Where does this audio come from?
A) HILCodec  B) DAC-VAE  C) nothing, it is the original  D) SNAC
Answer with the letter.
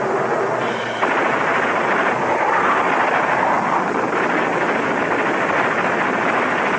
C